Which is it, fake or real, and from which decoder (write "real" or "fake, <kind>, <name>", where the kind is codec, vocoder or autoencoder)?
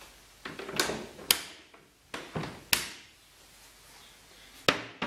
real